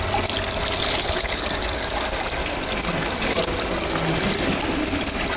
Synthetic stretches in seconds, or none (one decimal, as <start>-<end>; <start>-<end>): 0.8-1.4